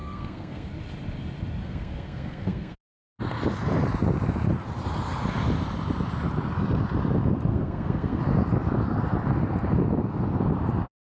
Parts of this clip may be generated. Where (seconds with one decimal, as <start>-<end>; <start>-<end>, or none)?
0.0-0.7; 1.6-3.2; 7.5-8.2